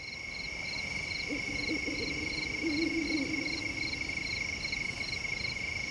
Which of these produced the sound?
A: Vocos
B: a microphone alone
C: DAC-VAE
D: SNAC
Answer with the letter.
B